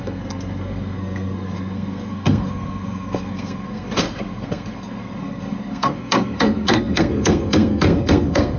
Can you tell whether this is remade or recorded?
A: remade